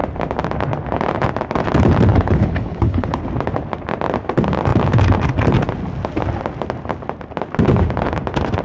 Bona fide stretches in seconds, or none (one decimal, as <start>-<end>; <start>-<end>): 0.0-2.1; 3.2-8.6